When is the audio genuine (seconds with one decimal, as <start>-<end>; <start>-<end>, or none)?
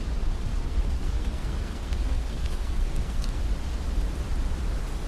0.0-0.5; 3.4-5.1